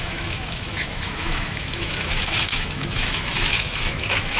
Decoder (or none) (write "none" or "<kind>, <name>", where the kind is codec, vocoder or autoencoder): autoencoder, DAC-VAE